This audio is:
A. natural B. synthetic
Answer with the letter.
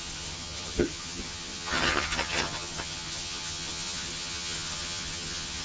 B